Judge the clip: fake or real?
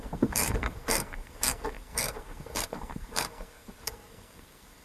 fake